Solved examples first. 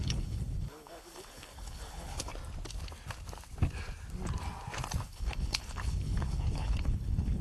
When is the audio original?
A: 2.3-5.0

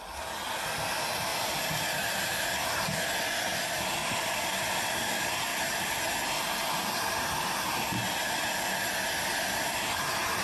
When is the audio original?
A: 0.0-1.3; 3.1-4.0; 4.5-10.4

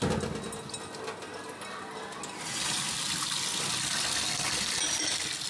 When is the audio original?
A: 0.0-5.5

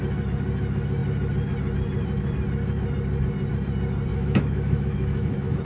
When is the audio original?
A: 0.0-4.1

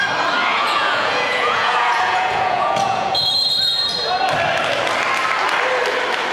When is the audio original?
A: 0.0-0.5; 3.3-6.3